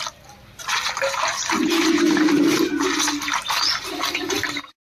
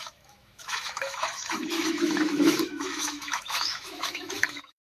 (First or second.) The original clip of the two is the first